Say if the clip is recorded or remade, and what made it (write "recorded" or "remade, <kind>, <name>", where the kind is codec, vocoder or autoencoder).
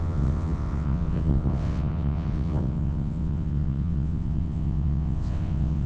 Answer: remade, vocoder, WaveNeXt